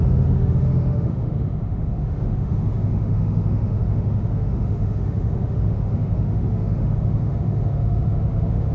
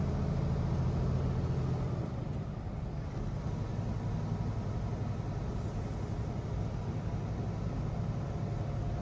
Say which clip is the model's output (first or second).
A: first